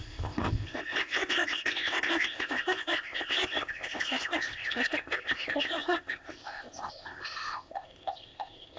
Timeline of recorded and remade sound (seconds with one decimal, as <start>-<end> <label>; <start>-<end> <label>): 0.0-8.8 remade